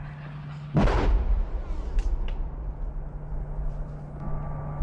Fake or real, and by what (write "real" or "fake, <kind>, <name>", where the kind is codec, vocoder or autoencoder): real